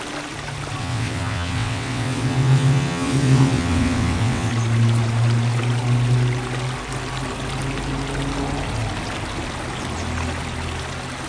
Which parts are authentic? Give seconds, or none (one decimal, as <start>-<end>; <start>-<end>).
0.0-0.8; 4.5-11.3